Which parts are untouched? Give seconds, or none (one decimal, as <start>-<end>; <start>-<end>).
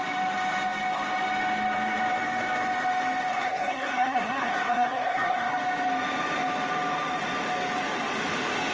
0.0-3.3; 5.5-8.7